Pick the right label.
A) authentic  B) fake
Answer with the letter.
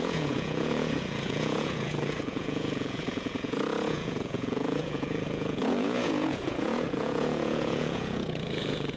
B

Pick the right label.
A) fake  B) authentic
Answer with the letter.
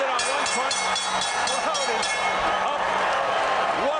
B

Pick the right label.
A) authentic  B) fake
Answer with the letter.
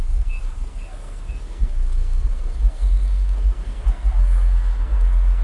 B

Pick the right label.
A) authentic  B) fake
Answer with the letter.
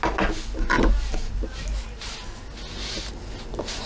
A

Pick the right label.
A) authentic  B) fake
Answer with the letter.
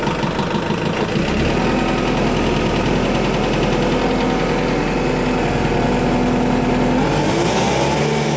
A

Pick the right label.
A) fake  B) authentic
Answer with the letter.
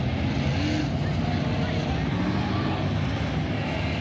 B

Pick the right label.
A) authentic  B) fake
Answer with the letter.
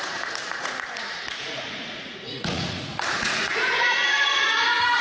B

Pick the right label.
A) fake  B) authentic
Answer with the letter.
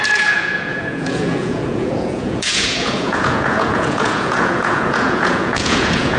A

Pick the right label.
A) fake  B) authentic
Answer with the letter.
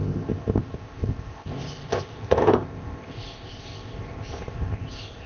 A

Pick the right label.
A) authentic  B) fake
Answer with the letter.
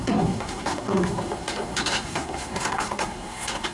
B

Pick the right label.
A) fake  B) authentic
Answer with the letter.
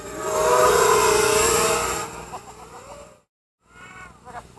B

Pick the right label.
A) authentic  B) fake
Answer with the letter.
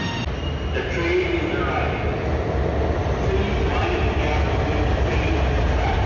A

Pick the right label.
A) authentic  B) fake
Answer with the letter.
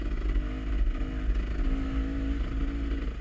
A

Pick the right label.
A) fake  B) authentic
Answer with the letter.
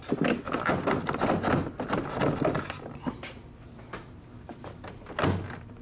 B